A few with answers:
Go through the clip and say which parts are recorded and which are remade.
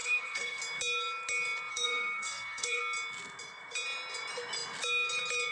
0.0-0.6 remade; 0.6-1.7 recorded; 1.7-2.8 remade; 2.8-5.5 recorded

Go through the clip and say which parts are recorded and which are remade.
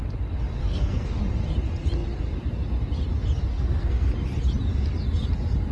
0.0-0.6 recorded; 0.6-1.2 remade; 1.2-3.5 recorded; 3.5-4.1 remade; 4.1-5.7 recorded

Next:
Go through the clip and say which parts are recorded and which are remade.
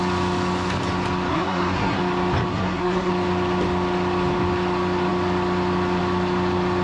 0.0-1.3 recorded; 1.3-2.0 remade; 2.0-2.5 recorded; 2.5-3.1 remade; 3.1-6.8 recorded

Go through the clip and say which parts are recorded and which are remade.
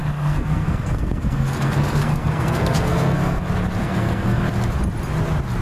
0.0-3.4 remade; 3.4-3.8 recorded; 3.8-4.4 remade; 4.4-5.6 recorded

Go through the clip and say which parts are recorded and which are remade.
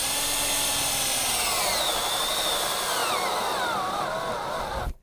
0.0-5.0 recorded